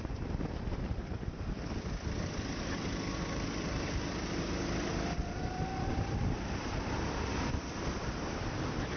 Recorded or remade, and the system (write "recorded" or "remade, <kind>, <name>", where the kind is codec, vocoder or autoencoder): remade, vocoder, BigVGAN v2